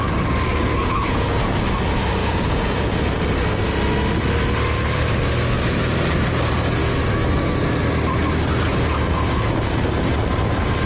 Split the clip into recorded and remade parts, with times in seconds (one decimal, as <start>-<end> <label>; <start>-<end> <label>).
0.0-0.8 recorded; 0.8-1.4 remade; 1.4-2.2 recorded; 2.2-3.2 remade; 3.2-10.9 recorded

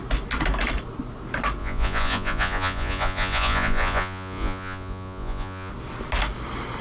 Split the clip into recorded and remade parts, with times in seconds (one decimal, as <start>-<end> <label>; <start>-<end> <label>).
0.0-1.6 recorded; 1.6-5.7 remade; 5.7-6.8 recorded

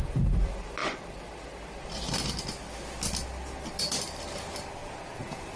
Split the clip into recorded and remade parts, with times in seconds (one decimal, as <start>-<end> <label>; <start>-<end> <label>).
0.0-4.8 recorded; 4.8-5.6 remade

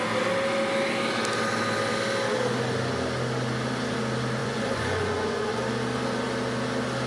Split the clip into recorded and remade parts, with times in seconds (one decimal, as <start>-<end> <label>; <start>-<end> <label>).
0.0-4.4 recorded; 4.4-5.6 remade; 5.6-7.1 recorded